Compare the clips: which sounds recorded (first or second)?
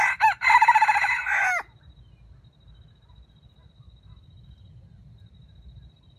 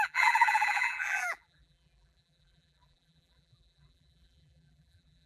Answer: first